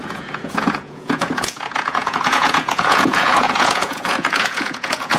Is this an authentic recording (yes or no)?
no